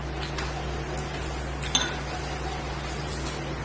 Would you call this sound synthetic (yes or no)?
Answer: no